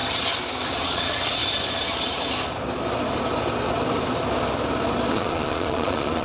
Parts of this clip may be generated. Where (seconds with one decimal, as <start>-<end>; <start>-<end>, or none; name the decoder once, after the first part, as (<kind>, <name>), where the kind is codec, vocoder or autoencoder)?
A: 0.7-1.4 (vocoder, Vocos); 5.1-6.2